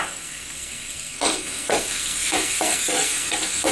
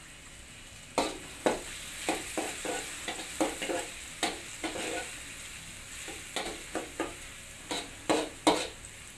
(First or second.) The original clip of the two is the second